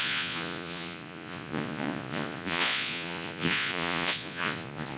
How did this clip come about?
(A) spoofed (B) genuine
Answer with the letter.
A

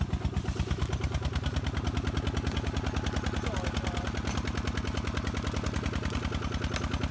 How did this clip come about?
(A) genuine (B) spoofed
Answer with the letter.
A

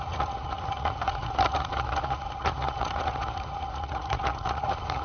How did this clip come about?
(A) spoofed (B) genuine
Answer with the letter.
A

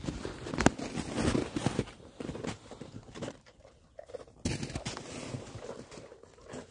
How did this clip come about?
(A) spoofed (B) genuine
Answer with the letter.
B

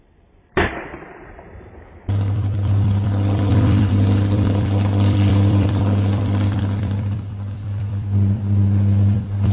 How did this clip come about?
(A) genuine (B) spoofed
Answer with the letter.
B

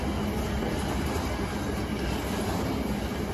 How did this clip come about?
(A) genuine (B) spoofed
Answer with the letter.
A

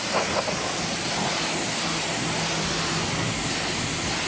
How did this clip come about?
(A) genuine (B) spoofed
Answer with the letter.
A